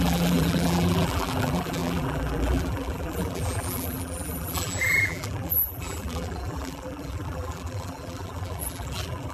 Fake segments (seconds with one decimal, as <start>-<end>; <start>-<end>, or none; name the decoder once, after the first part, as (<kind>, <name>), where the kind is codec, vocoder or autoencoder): 0.0-9.3 (vocoder, BigVGAN v2)